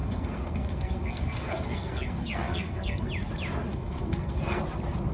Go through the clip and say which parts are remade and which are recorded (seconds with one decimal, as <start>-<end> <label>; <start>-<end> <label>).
0.0-3.1 remade; 3.1-3.7 recorded; 3.7-4.6 remade; 4.6-5.1 recorded